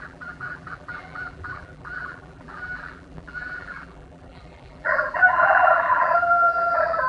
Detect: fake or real fake